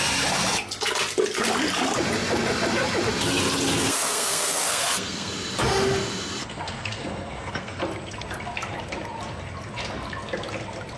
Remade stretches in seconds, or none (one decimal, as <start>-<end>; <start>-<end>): 3.8-5.3; 6.4-7.8